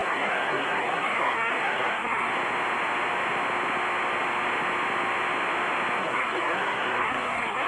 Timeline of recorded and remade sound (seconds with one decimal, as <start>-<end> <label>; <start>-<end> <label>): 0.0-2.3 remade; 2.3-6.0 recorded; 6.0-7.7 remade